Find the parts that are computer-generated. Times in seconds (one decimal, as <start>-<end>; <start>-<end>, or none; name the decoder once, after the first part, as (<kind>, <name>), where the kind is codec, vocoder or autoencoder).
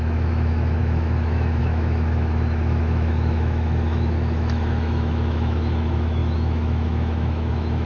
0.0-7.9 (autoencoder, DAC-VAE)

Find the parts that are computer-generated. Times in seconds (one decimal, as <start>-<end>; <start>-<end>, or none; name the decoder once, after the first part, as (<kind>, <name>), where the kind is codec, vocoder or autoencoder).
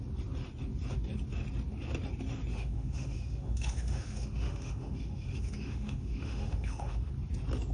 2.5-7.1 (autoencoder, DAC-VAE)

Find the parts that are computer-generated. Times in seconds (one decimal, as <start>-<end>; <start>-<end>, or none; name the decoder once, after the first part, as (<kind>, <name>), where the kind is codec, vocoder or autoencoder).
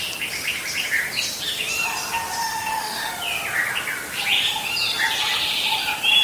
2.4-3.1 (autoencoder, DAC-VAE)